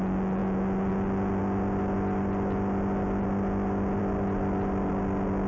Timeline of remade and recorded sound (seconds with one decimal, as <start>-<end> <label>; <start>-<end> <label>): 0.0-5.5 recorded

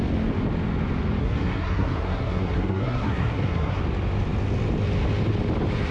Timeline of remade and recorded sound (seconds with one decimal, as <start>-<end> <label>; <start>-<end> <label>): 0.0-1.2 recorded; 1.2-3.8 remade; 3.8-5.9 recorded

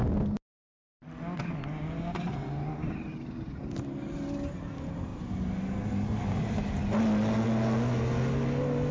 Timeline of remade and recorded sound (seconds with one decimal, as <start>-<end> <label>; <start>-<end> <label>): 0.0-8.9 recorded

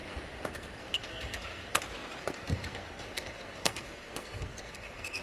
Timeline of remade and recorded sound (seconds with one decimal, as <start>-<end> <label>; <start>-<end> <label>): 0.0-1.8 remade; 1.8-2.2 recorded; 2.2-5.2 remade

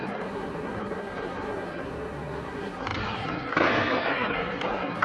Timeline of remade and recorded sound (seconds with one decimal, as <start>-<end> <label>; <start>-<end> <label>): 0.0-5.0 remade

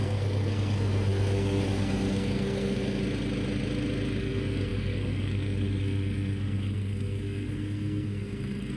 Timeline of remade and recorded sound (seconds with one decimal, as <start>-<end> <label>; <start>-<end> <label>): 0.0-3.0 remade; 3.0-4.2 recorded; 4.2-8.8 remade

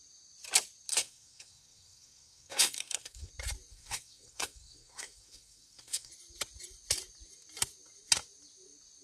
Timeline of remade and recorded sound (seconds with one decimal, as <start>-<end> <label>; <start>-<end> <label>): 0.0-0.9 recorded; 0.9-3.3 remade; 3.3-3.7 recorded; 3.7-6.1 remade; 6.1-9.0 recorded